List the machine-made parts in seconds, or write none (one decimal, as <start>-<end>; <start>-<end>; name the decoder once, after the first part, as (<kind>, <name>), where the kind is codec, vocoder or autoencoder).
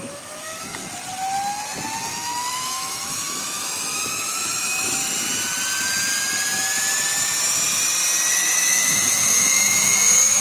0.0-0.8 (autoencoder, DAC-VAE); 2.5-5.0; 8.3-10.4